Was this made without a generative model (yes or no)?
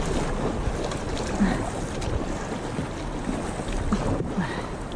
yes